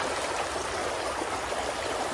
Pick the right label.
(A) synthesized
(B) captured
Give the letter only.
B